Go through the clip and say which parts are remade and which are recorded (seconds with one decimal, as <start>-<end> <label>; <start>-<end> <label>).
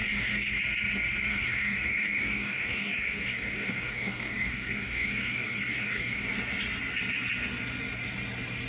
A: 0.0-0.6 remade; 0.6-1.3 recorded; 1.3-6.3 remade; 6.3-8.7 recorded